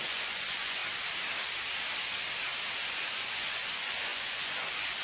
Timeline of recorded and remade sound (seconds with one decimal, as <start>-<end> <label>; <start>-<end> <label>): 0.0-0.8 remade; 0.8-2.9 recorded; 2.9-5.0 remade